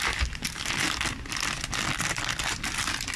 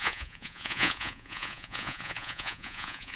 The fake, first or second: second